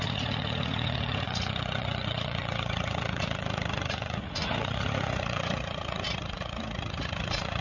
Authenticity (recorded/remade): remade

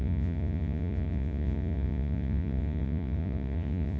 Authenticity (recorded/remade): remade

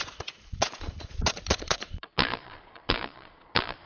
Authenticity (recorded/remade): remade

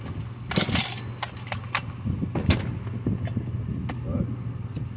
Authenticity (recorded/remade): recorded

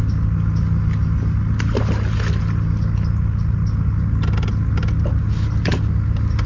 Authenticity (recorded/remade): recorded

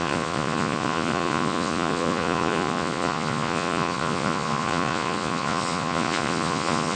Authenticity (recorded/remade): remade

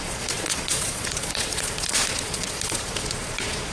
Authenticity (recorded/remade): remade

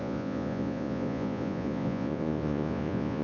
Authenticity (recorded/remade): remade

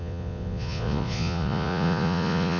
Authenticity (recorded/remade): remade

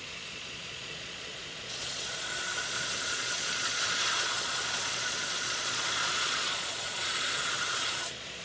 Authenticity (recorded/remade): remade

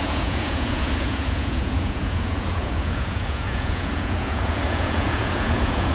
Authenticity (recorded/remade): remade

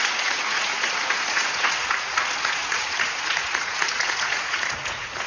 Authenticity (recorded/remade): remade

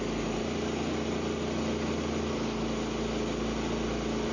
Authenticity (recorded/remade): recorded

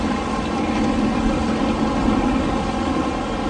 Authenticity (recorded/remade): recorded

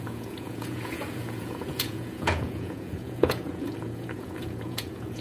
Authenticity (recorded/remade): remade